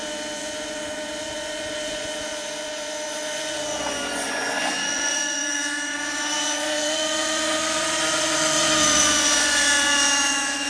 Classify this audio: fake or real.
fake